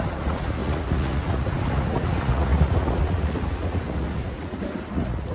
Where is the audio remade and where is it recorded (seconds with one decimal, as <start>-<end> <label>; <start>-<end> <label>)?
0.0-5.3 remade